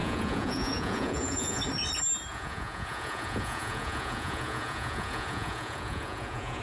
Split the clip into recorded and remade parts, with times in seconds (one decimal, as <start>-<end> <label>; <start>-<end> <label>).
0.0-1.6 remade; 1.6-2.3 recorded; 2.3-6.6 remade